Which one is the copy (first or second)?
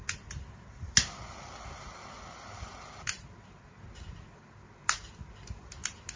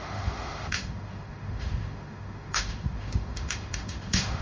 second